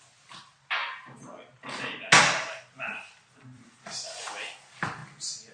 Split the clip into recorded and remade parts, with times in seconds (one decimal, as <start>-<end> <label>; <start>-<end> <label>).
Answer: 0.0-0.8 remade; 0.8-2.2 recorded; 2.2-5.0 remade; 5.0-5.5 recorded